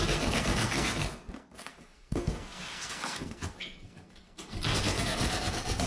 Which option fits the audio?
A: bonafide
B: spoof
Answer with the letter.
B